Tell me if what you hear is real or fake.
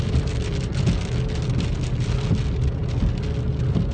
real